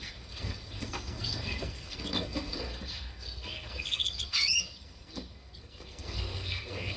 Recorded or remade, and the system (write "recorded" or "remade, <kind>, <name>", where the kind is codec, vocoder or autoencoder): remade, codec, SNAC